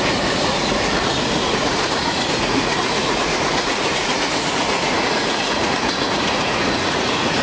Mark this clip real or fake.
fake